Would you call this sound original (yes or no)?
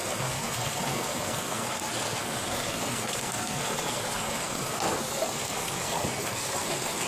no